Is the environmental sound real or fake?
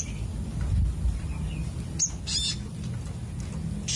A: real